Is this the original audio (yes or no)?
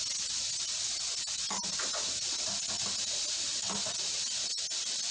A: yes